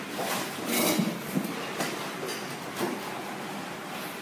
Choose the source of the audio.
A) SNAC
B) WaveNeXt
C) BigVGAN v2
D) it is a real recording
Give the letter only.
D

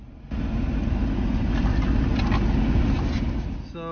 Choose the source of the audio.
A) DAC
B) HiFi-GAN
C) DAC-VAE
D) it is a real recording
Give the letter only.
D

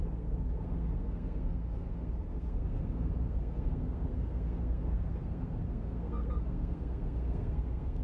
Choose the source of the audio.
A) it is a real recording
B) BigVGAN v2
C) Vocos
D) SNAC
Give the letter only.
D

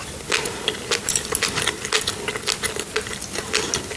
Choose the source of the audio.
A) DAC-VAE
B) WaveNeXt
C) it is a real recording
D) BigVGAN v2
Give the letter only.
C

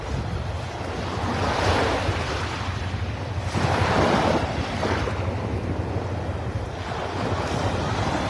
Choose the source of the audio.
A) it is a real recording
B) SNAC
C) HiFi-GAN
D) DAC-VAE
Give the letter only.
A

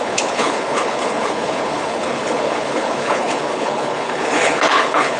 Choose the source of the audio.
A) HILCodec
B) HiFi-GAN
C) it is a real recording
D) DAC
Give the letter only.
A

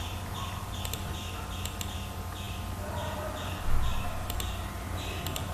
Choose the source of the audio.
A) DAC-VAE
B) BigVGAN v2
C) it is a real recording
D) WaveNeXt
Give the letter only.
C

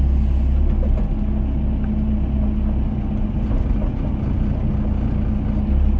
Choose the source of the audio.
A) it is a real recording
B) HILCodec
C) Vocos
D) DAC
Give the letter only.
A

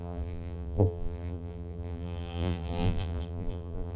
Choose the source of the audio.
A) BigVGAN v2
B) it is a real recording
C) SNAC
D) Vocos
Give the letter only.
A